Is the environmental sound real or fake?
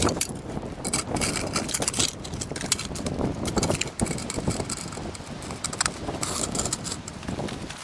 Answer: real